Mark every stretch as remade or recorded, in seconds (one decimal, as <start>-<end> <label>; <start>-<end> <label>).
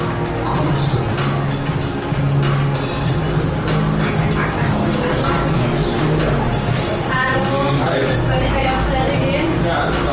0.0-10.1 recorded